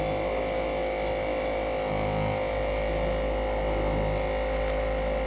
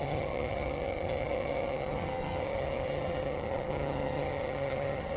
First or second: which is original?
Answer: first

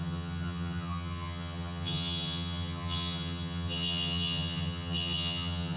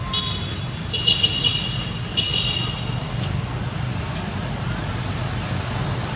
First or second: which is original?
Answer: second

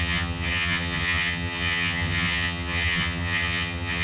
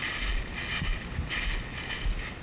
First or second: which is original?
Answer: second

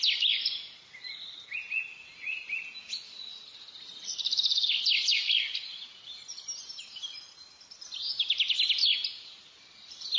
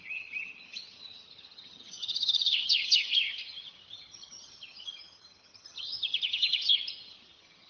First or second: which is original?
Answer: first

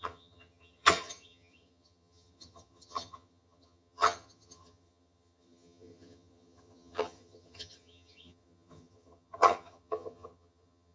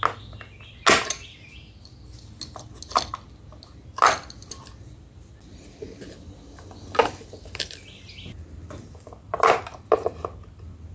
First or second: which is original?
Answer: second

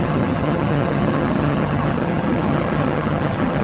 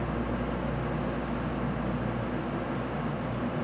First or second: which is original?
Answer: second